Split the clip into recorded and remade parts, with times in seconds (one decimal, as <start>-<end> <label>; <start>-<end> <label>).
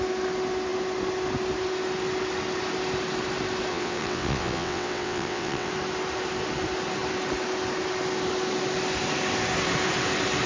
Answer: 0.0-3.7 recorded; 3.7-5.7 remade; 5.7-10.5 recorded